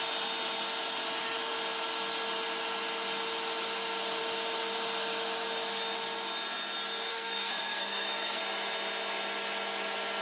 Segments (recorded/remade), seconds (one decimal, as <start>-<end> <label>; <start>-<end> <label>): 0.0-7.1 recorded; 7.1-8.4 remade; 8.4-10.2 recorded